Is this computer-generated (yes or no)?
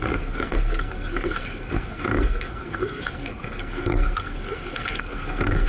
yes